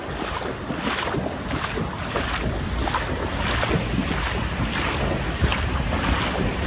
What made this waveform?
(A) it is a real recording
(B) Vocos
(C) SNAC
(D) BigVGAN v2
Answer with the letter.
A